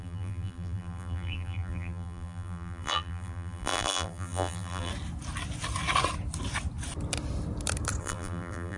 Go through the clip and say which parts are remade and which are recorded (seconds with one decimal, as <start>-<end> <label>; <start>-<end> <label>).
0.0-4.9 remade; 4.9-8.0 recorded; 8.0-8.8 remade